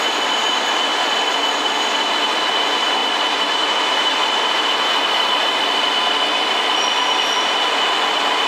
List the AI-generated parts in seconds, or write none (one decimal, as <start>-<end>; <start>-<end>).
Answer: none